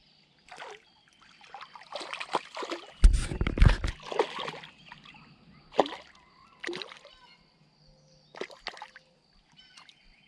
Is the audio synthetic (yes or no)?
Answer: no